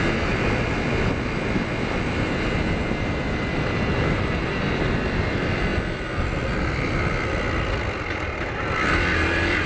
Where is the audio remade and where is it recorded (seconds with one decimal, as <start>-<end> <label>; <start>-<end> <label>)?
0.0-9.7 recorded